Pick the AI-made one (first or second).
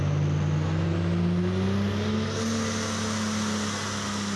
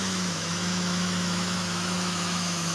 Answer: second